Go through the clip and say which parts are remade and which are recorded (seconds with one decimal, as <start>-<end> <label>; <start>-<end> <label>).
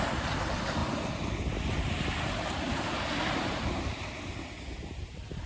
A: 0.0-5.5 recorded